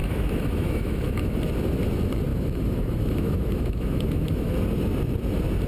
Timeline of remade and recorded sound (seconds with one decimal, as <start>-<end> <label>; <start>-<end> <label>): 0.0-1.4 remade; 1.4-2.3 recorded; 2.3-4.5 remade; 4.5-5.7 recorded